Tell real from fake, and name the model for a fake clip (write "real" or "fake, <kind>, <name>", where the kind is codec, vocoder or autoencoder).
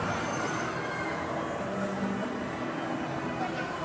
real